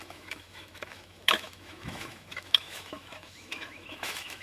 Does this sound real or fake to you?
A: fake